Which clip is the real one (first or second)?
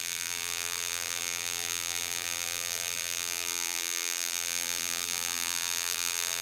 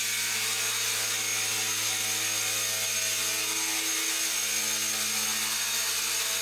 second